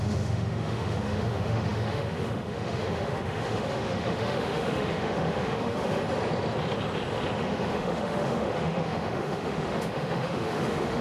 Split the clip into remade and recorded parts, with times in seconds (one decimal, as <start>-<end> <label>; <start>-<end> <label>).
0.0-6.0 remade; 6.0-7.4 recorded; 7.4-11.0 remade